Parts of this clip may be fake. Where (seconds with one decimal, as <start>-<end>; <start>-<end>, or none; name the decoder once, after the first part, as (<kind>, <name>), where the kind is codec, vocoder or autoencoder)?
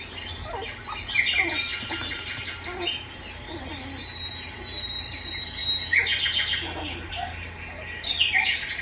none